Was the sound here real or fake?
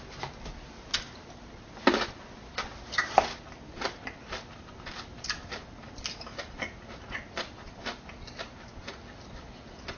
fake